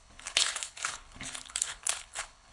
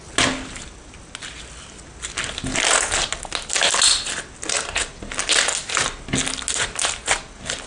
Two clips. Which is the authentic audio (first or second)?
second